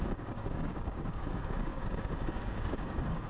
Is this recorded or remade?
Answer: remade